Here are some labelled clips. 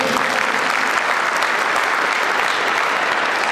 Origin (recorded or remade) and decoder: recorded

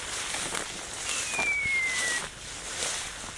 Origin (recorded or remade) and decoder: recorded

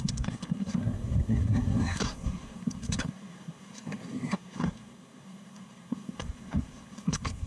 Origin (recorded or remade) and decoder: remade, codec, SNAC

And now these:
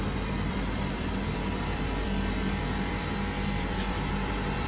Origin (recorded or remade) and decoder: remade, vocoder, BigVGAN v2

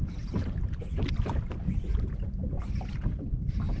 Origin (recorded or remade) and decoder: recorded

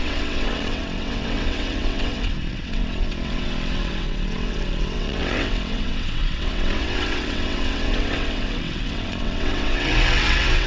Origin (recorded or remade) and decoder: remade, vocoder, WaveNeXt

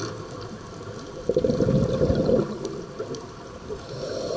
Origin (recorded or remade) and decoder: recorded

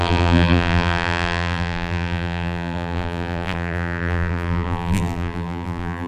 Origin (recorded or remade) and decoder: remade, vocoder, BigVGAN v2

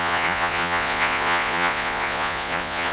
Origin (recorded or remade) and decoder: remade, vocoder, Vocos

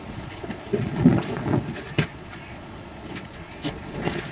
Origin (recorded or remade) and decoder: remade, vocoder, Vocos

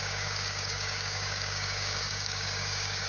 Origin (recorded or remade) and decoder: remade, codec, DAC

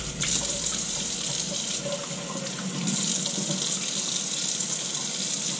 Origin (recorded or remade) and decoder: recorded